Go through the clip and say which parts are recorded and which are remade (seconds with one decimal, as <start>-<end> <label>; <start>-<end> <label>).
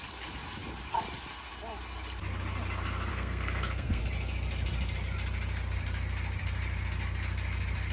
0.0-3.1 recorded; 3.1-4.0 remade; 4.0-7.9 recorded